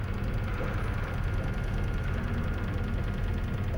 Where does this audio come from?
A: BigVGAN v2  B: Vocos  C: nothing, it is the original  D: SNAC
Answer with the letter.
C